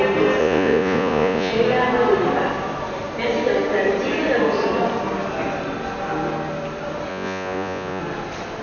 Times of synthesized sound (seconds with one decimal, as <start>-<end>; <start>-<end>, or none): 0.4-1.5; 7.1-8.0